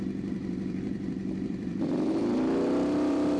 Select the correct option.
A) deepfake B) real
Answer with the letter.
A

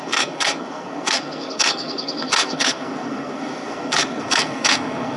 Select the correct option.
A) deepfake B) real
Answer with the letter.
A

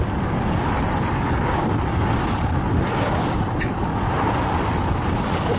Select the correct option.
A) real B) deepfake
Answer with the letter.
A